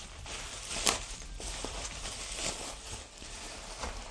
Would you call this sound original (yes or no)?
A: yes